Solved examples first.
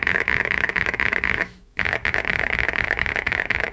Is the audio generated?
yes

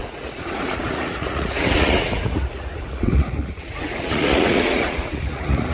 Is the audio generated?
yes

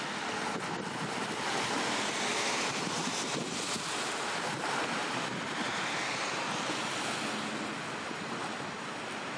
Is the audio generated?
no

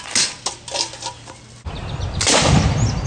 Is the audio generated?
no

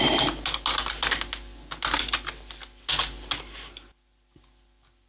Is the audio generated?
no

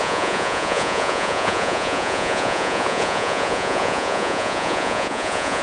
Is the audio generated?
yes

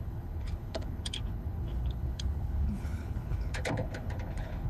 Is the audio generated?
yes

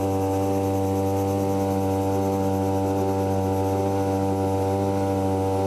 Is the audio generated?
no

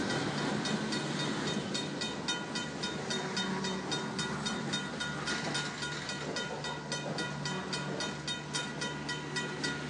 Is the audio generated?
no